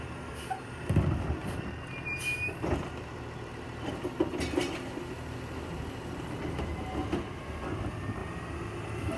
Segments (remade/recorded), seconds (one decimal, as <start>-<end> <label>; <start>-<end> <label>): 0.0-9.2 recorded